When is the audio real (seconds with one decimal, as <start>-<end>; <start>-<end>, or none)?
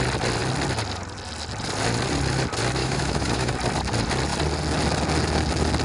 0.0-2.8; 3.5-5.8